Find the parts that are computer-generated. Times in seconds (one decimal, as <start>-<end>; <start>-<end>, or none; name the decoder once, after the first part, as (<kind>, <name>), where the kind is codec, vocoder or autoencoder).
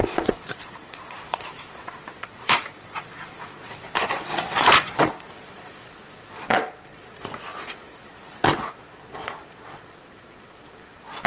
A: 0.0-11.3 (vocoder, Vocos)